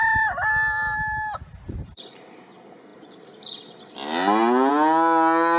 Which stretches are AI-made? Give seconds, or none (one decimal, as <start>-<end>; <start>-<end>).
none